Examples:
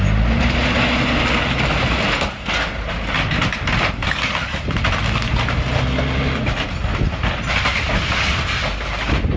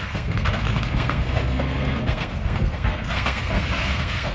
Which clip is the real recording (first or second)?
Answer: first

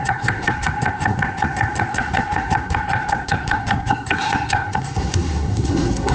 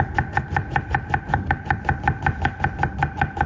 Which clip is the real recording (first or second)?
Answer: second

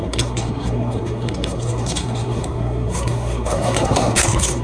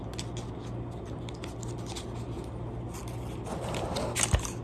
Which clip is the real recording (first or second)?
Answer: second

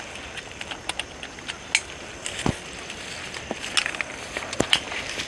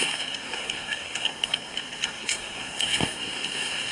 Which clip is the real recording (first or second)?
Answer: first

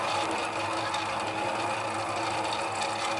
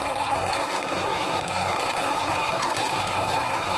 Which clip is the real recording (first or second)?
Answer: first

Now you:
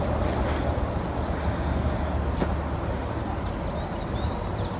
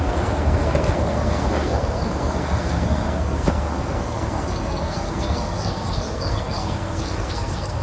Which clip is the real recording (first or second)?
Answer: first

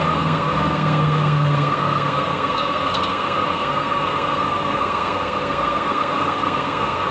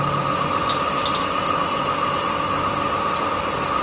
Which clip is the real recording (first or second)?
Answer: second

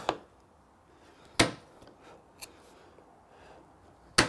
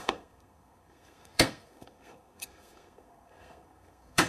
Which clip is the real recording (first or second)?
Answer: first